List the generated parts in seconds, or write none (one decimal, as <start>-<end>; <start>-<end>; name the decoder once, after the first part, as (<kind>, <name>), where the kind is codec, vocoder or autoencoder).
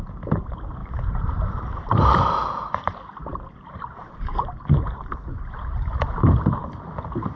0.0-6.6 (vocoder, BigVGAN v2)